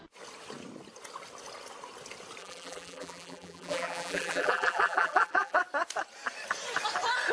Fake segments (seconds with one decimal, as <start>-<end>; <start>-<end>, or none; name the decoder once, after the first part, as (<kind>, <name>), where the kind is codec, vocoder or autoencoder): 2.4-5.6 (vocoder, BigVGAN v2)